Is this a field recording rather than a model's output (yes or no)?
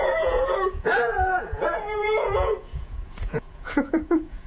no